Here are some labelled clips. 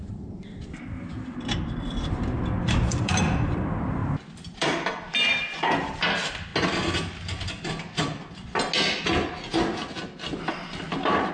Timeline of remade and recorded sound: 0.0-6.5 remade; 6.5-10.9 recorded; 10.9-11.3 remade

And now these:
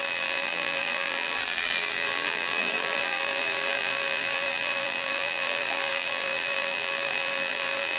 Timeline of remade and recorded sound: 0.0-8.0 remade

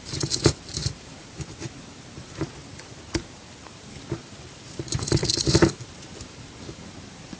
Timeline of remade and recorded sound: 0.0-7.4 remade

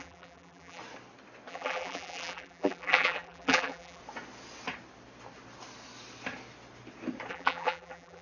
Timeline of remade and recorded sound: 0.0-0.8 remade; 0.8-1.5 recorded; 1.5-4.0 remade; 4.0-7.3 recorded; 7.3-8.2 remade

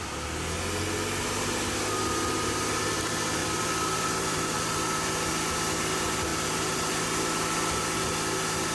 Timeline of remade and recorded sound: 0.0-3.4 recorded; 3.4-5.3 remade; 5.3-6.3 recorded; 6.3-6.9 remade; 6.9-8.7 recorded